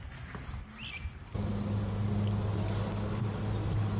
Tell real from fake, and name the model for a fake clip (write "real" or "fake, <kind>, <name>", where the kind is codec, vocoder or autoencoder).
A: real